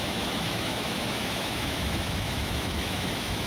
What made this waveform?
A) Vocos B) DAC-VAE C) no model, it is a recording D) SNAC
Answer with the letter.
B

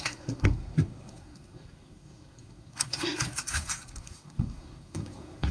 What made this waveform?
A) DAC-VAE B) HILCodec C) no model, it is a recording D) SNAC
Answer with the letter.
D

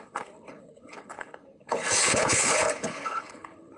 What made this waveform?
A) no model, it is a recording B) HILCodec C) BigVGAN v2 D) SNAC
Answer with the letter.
B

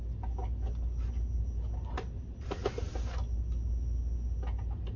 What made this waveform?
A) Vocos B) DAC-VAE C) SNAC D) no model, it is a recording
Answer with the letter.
D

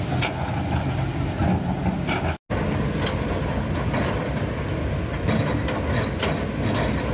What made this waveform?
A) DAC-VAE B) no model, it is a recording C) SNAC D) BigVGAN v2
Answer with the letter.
B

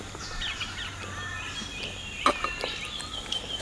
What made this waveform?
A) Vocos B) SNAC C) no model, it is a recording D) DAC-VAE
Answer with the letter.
C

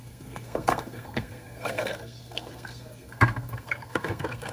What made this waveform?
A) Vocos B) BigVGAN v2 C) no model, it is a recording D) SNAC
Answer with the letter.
D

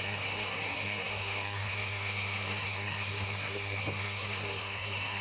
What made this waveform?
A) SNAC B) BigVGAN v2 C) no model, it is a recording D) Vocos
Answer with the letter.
A